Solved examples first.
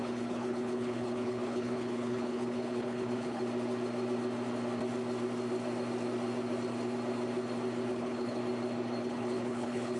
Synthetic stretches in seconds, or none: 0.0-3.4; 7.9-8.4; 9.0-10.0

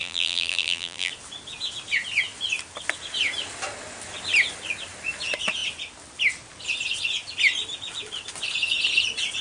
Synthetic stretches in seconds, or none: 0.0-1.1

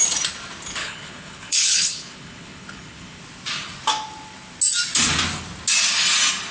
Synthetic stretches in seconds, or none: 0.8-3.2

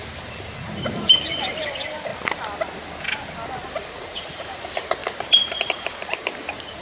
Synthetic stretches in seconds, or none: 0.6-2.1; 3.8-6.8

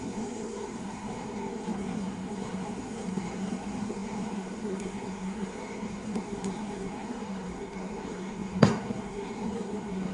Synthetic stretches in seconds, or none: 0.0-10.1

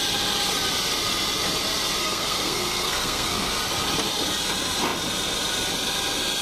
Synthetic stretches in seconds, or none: 2.0-3.5